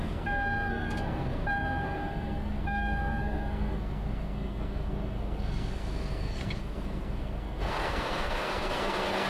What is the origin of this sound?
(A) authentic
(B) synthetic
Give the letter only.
B